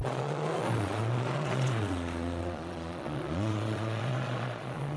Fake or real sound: fake